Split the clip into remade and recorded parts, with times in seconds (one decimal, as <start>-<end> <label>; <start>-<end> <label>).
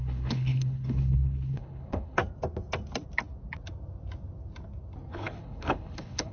0.0-2.2 remade; 2.2-5.1 recorded; 5.1-6.3 remade